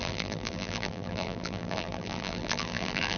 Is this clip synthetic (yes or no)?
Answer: yes